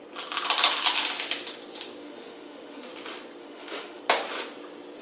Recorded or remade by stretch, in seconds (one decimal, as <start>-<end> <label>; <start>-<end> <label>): 0.0-2.0 recorded; 2.0-2.9 remade; 2.9-3.4 recorded; 3.4-4.0 remade; 4.0-5.0 recorded